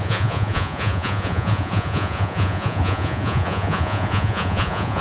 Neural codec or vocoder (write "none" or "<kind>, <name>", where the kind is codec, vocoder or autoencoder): vocoder, Vocos